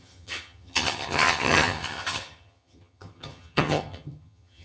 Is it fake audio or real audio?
fake